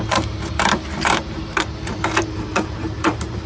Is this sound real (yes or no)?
no